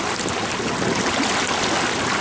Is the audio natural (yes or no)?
yes